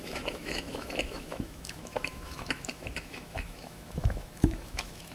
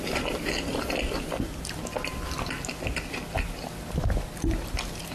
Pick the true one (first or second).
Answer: second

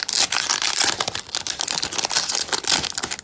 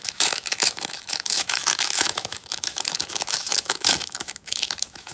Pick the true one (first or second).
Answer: first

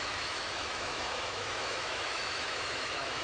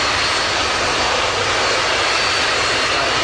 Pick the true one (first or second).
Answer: second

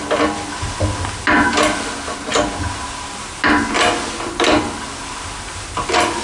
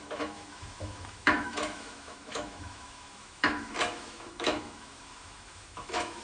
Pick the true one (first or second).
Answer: first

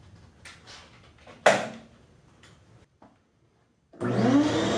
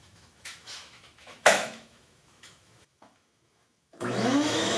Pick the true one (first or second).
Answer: first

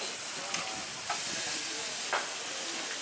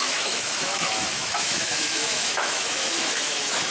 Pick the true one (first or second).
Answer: first